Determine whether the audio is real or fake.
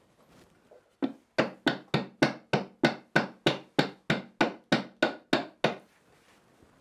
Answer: real